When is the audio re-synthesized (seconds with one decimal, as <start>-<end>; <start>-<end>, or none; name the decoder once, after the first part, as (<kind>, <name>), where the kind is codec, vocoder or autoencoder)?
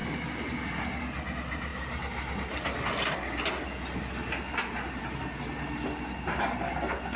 none